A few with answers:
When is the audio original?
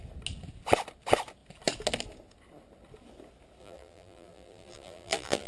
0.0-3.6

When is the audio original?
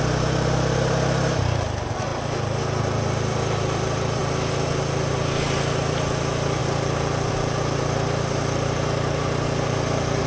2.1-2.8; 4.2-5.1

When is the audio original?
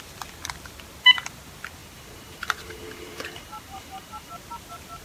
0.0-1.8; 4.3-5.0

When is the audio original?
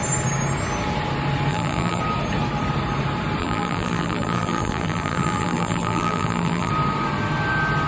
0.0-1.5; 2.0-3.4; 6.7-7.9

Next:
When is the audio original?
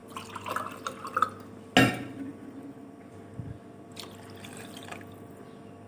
0.0-5.9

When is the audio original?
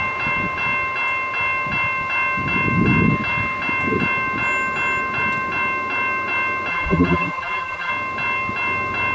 0.0-6.7; 7.9-9.1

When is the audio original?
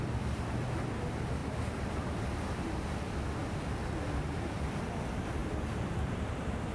3.4-4.2; 5.4-6.1